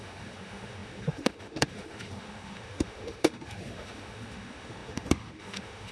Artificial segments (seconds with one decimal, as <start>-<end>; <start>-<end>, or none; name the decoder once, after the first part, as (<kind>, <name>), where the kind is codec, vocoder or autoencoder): 0.0-5.9 (autoencoder, DAC-VAE)